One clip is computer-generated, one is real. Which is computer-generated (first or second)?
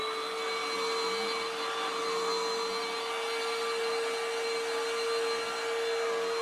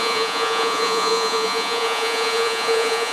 second